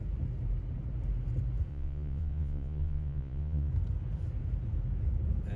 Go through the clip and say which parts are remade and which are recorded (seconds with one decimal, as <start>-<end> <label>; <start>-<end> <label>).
0.0-1.7 recorded; 1.7-3.7 remade; 3.7-5.6 recorded